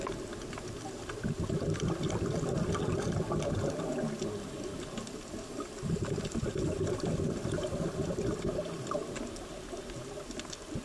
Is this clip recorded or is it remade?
recorded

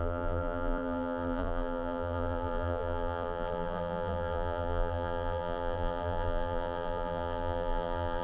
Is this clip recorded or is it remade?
remade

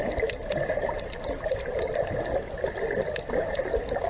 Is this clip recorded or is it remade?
remade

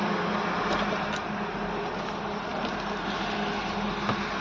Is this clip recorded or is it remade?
recorded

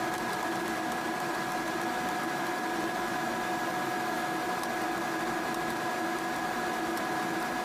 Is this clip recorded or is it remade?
recorded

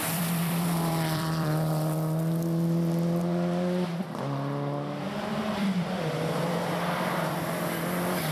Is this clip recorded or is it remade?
remade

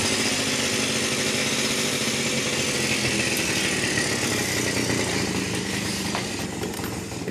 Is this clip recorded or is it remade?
recorded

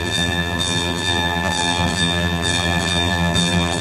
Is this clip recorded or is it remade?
remade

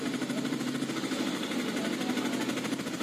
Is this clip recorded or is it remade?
recorded